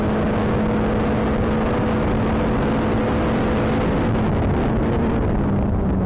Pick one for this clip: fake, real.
real